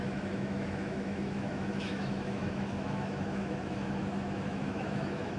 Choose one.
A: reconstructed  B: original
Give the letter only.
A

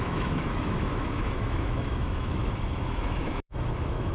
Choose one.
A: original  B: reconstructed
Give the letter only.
B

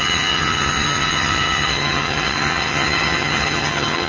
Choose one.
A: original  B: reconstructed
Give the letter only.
B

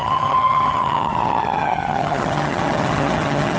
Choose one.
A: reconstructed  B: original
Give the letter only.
A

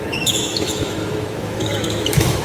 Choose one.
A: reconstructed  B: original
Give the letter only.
A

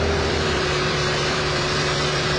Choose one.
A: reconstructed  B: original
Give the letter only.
A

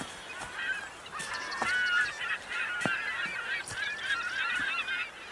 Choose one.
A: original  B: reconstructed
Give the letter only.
A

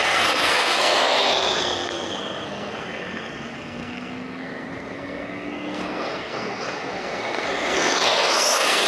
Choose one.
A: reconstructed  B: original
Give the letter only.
A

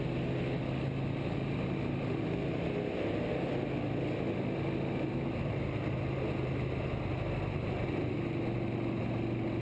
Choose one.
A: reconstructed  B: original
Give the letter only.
B